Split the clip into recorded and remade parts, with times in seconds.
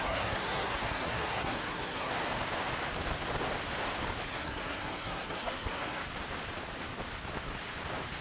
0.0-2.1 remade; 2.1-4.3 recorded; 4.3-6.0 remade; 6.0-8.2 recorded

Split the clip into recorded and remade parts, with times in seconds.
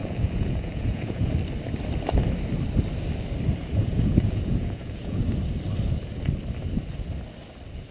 0.0-1.3 remade; 1.3-3.6 recorded; 3.6-5.2 remade; 5.2-7.9 recorded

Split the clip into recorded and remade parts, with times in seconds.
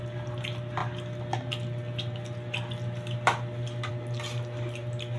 0.0-5.2 recorded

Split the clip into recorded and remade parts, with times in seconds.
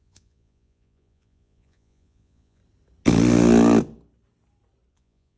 0.0-2.6 remade; 2.6-4.9 recorded; 4.9-5.4 remade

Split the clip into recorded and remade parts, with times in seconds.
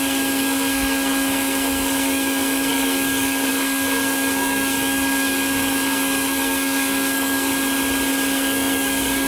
0.0-7.5 remade; 7.5-8.1 recorded; 8.1-9.3 remade